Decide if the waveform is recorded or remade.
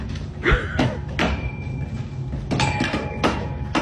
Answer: recorded